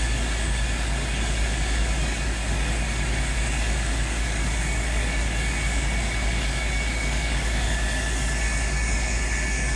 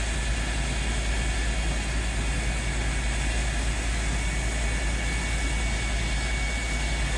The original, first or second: second